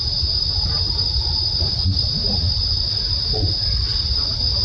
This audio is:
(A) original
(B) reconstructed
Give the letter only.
A